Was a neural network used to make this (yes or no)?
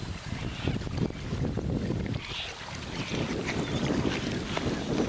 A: no